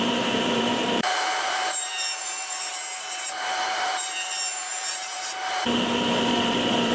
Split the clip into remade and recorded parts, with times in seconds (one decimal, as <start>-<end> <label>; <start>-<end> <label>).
0.0-6.9 remade